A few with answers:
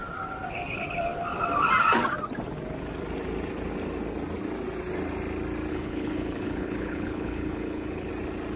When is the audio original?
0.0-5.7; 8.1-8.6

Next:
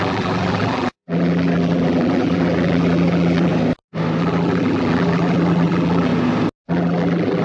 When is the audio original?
3.5-4.2; 6.1-6.7

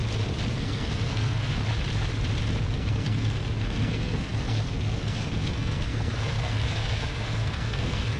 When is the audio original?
0.0-0.5; 1.6-2.6